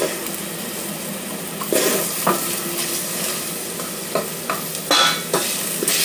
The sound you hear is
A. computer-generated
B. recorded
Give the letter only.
B